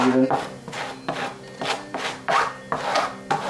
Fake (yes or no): no